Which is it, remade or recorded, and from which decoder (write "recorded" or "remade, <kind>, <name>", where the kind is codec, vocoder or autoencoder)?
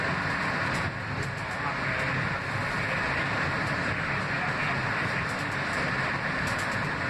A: recorded